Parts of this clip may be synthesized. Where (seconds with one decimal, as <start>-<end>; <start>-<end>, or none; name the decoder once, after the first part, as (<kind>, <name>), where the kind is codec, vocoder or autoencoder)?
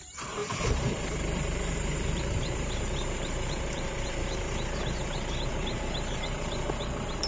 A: 0.0-7.3 (vocoder, BigVGAN v2)